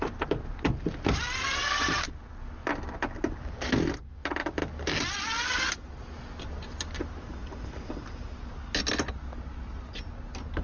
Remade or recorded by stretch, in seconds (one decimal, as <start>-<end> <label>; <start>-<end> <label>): 0.0-10.6 recorded